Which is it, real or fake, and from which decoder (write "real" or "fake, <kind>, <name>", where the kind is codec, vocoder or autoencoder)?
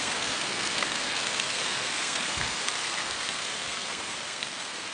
fake, codec, SNAC